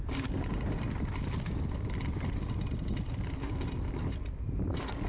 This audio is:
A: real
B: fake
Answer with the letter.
A